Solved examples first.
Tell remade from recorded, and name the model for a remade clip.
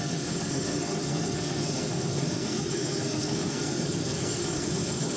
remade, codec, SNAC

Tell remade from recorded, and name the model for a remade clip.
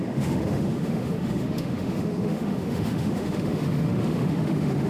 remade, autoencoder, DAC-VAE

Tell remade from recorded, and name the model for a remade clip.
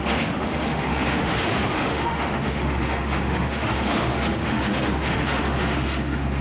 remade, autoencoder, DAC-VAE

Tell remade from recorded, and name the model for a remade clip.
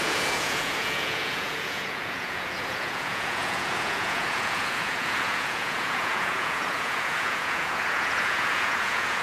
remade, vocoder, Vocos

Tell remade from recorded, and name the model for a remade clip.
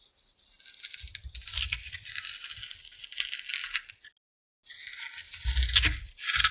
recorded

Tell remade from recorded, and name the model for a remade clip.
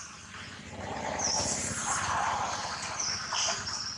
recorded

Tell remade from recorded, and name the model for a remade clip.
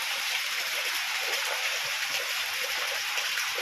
remade, vocoder, BigVGAN v2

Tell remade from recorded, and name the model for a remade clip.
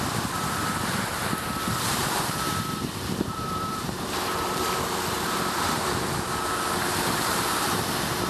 remade, vocoder, BigVGAN v2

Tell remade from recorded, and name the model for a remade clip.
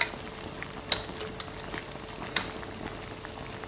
recorded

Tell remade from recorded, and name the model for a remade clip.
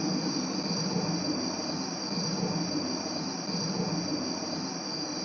recorded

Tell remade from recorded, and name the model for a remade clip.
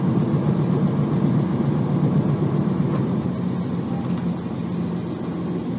recorded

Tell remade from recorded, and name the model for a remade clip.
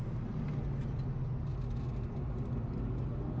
recorded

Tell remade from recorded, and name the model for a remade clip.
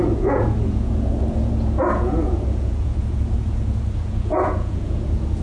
remade, vocoder, Vocos